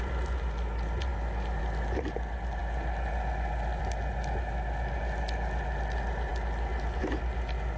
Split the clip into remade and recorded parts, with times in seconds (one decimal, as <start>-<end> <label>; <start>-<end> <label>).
0.0-7.8 recorded